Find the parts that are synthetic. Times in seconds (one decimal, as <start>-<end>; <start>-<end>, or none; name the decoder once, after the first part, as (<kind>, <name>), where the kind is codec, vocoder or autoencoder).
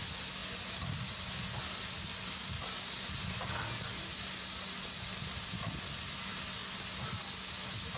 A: none